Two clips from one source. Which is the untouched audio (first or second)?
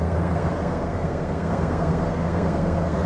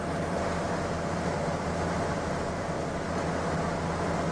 second